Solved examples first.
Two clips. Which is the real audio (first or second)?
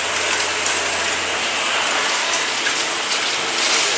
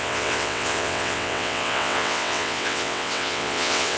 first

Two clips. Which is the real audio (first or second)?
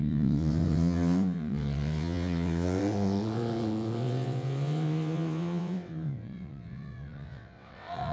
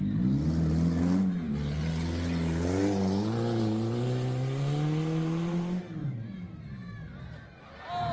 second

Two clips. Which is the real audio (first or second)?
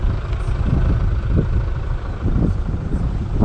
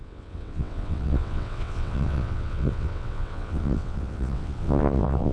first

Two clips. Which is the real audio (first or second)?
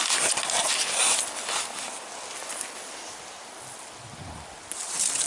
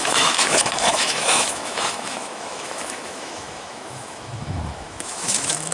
first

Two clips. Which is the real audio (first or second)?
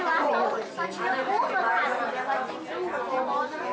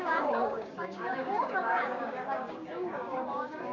first